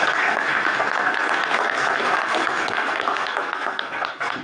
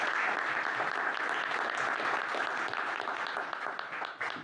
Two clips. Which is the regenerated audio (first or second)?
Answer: first